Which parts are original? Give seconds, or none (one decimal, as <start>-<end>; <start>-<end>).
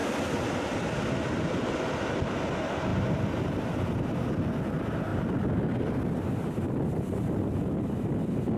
1.1-2.9; 3.5-5.1; 7.8-8.6